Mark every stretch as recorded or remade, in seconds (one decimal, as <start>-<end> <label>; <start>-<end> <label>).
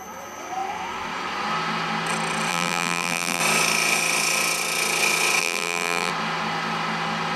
0.0-2.5 recorded; 2.5-3.4 remade; 3.4-5.4 recorded; 5.4-6.1 remade; 6.1-7.4 recorded